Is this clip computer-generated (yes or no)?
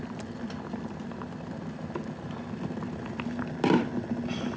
no